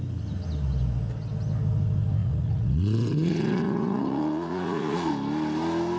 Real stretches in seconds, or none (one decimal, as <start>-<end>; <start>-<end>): 0.0-2.2; 5.1-6.0